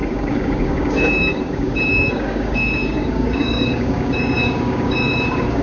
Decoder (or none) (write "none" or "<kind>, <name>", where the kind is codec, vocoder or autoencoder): codec, DAC